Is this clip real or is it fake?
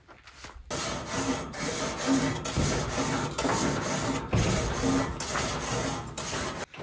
real